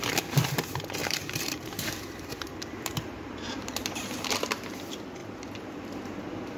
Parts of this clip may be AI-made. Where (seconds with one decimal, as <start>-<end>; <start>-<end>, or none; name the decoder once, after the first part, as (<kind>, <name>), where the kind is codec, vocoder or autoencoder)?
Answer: 1.0-4.7 (vocoder, BigVGAN v2); 5.2-6.6